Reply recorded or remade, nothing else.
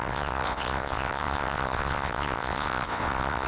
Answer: remade